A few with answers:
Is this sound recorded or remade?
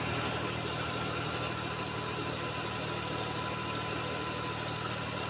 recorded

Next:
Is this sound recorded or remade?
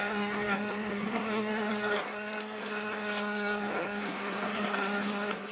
remade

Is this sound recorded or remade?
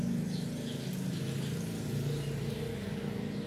recorded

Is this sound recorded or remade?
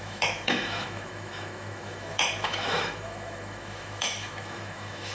remade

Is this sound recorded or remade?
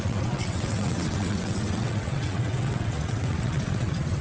remade